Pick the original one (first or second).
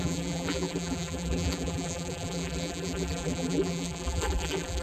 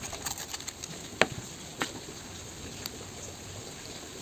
second